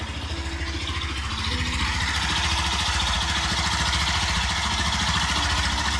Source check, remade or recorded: recorded